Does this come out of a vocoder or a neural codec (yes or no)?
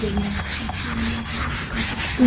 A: no